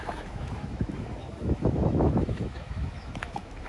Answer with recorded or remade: remade